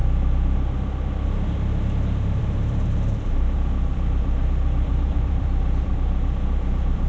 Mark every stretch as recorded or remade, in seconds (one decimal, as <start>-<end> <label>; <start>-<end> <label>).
0.0-2.2 recorded; 2.2-7.1 remade